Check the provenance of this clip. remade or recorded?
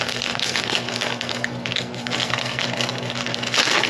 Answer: remade